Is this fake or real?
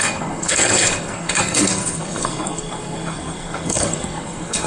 fake